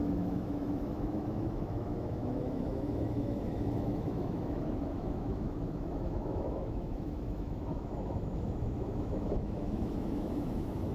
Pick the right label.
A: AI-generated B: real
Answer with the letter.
A